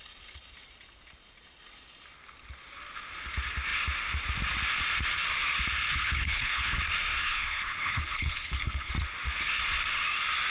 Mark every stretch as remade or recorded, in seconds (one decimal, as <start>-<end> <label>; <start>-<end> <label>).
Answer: 0.0-5.9 recorded; 5.9-6.8 remade; 6.8-7.2 recorded; 7.2-8.9 remade; 8.9-10.5 recorded